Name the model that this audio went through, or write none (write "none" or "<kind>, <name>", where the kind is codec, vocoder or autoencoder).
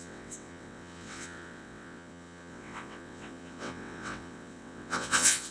vocoder, WaveNeXt